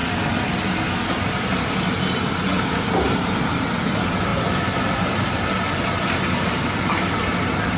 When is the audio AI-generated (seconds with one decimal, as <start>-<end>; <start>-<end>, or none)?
3.0-7.8